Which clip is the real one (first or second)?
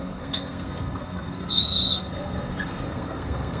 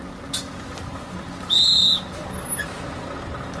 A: second